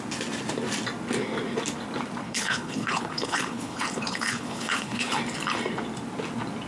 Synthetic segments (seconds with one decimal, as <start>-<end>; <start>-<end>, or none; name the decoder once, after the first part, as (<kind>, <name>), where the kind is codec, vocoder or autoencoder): 2.2-5.1 (codec, HILCodec)